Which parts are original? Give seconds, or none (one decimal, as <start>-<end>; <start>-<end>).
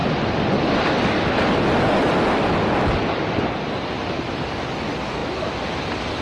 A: 0.0-6.2